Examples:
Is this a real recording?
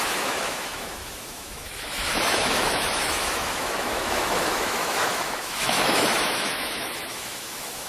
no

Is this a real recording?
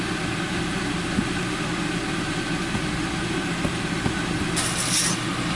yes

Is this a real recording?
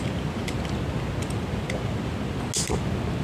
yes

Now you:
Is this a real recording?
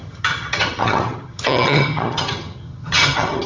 no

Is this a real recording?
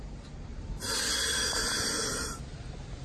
yes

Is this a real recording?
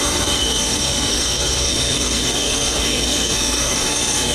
no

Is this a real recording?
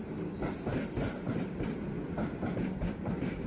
yes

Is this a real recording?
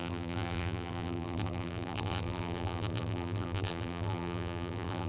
no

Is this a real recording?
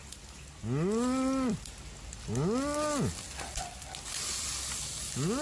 yes